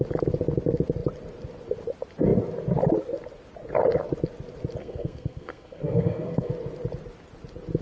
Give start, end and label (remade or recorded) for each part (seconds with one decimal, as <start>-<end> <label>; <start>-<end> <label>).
0.0-4.8 recorded; 4.8-6.5 remade; 6.5-7.8 recorded